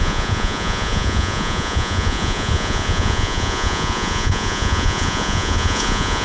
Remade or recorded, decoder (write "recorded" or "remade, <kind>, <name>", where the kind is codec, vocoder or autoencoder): remade, vocoder, Vocos